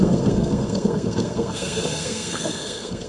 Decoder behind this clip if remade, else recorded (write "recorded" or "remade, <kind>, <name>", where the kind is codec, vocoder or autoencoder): remade, codec, SNAC